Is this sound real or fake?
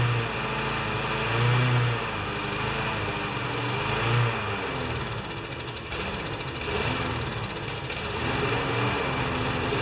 real